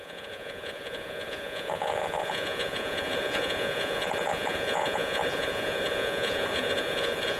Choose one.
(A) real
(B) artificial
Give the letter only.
B